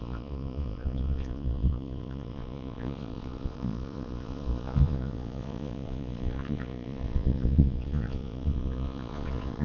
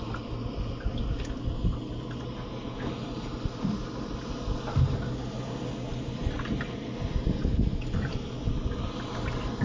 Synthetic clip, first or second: first